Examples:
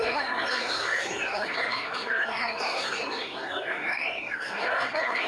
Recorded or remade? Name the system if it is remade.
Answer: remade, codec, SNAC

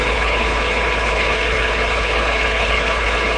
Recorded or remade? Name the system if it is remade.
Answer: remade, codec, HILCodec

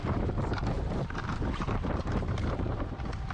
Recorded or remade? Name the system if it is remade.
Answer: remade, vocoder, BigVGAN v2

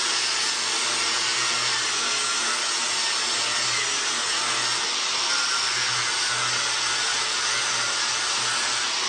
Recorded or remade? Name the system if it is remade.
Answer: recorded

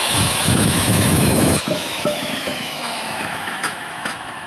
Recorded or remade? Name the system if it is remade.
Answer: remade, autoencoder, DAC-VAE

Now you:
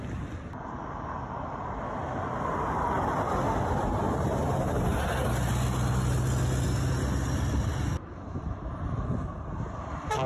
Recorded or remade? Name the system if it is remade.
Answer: recorded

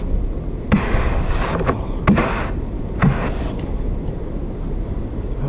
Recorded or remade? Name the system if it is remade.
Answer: recorded